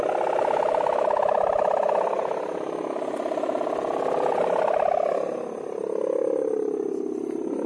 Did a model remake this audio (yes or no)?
no